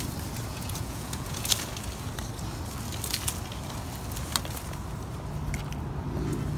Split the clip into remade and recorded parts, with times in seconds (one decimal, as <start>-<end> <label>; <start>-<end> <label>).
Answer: 0.0-0.5 recorded; 0.5-1.5 remade; 1.5-6.6 recorded